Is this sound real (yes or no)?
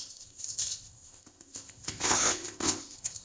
no